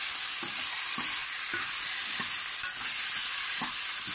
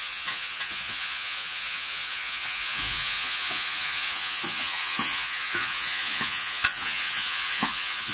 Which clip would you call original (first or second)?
first